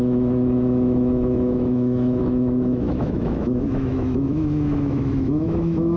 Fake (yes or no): yes